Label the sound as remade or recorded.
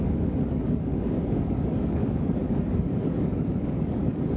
remade